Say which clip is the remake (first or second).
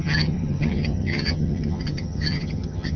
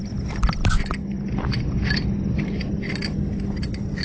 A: first